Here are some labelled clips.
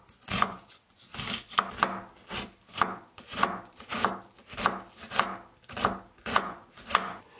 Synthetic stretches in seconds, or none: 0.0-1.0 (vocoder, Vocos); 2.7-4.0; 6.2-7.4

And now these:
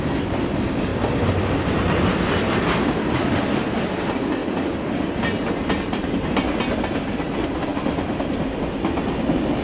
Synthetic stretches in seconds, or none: none

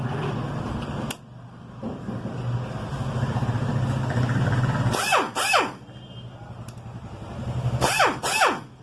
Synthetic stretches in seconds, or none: none

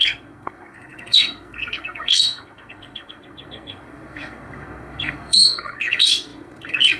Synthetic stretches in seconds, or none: 0.0-7.0 (codec, SNAC)